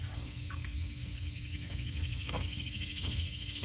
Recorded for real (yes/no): no